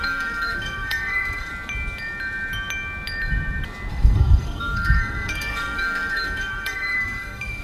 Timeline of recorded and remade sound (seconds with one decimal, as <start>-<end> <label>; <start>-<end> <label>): 0.0-1.5 remade; 1.5-3.9 recorded; 3.9-7.6 remade